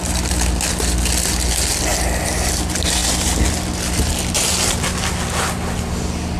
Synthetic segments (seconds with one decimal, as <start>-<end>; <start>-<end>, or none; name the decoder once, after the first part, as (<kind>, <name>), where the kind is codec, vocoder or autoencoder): none